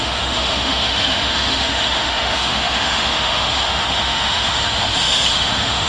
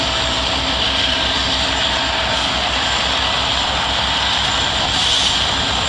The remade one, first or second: first